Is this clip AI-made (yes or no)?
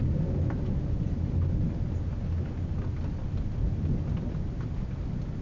no